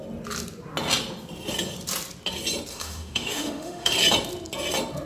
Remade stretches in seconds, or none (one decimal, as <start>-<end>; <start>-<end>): 2.7-3.9